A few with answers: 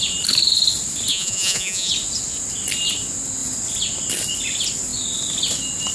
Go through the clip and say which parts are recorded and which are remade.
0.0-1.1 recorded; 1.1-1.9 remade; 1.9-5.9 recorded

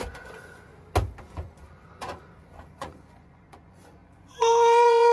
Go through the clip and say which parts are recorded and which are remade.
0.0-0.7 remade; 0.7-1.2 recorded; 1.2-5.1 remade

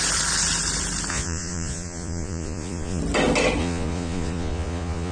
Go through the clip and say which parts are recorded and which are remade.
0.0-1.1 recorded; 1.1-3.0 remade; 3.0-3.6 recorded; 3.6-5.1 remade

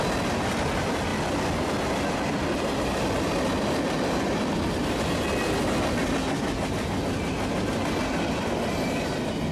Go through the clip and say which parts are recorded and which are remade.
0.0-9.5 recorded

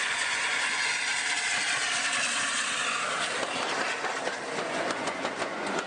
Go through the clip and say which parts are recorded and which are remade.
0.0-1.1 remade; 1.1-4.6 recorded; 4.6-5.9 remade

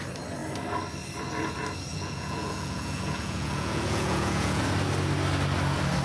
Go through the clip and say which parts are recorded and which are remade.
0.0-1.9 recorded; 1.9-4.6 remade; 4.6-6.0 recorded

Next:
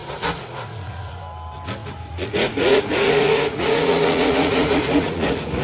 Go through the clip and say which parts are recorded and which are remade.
0.0-1.2 remade; 1.2-1.8 recorded; 1.8-5.6 remade